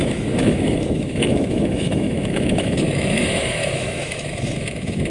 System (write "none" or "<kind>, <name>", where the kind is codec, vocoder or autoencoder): autoencoder, DAC-VAE